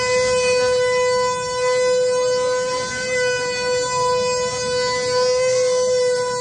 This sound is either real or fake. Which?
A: real